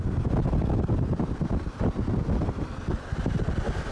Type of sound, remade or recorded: remade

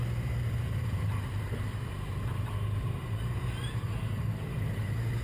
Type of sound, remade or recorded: remade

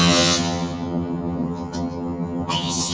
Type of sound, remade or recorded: remade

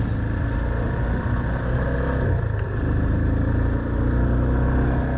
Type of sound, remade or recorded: recorded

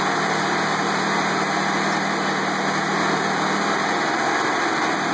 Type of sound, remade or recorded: recorded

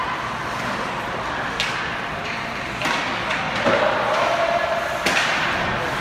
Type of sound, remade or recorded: recorded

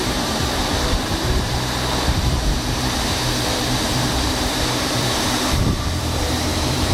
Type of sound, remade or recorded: remade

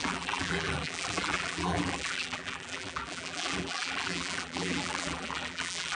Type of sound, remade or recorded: remade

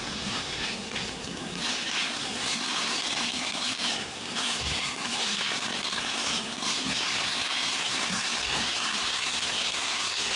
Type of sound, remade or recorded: remade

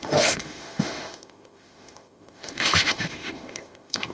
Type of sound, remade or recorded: remade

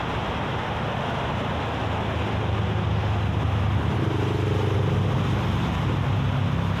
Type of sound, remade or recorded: recorded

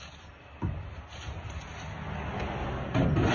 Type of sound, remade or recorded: recorded